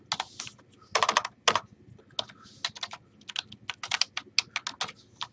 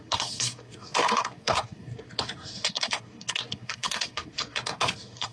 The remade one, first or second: second